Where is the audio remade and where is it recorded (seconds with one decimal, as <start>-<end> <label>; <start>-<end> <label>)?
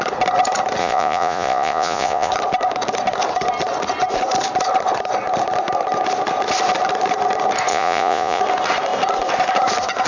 0.0-0.8 recorded; 0.8-2.3 remade; 2.3-7.7 recorded; 7.7-8.4 remade; 8.4-10.1 recorded